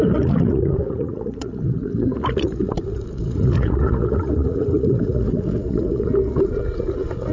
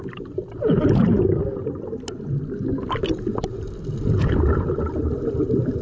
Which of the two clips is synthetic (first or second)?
first